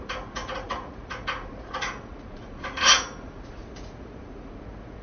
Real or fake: fake